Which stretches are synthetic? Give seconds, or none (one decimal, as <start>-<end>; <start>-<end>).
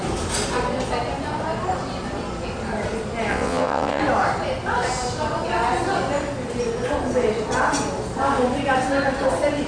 3.3-4.0